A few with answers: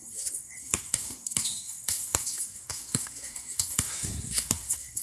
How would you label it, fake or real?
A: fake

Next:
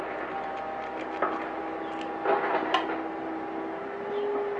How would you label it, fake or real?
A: real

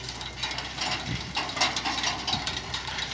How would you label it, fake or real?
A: real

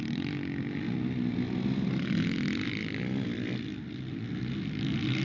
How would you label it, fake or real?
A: real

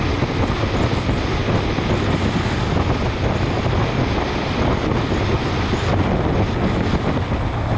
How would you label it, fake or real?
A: real